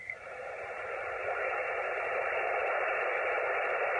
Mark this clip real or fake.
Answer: fake